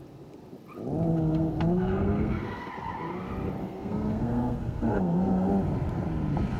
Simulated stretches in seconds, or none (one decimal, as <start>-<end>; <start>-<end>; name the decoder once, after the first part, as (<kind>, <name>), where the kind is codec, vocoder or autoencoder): 1.1-2.7 (codec, SNAC); 3.6-5.5

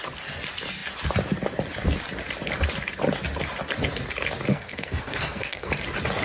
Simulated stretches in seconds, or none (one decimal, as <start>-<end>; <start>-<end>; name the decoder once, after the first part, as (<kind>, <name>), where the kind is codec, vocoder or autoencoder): 4.5-5.7 (codec, SNAC)